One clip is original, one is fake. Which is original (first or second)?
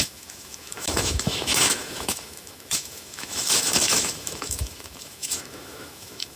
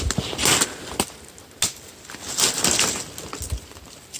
second